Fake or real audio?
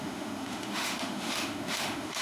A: fake